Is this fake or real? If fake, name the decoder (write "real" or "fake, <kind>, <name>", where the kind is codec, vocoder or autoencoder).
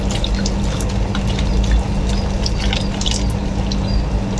real